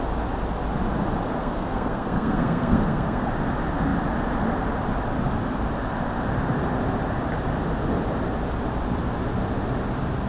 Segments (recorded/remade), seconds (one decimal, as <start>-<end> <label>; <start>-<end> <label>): 0.0-1.4 recorded; 1.4-3.3 remade; 3.3-10.3 recorded